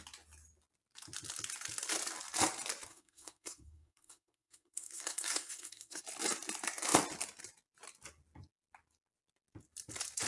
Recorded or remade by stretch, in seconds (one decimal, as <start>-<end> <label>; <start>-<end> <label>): 0.0-2.9 recorded; 2.9-6.0 remade; 6.0-10.3 recorded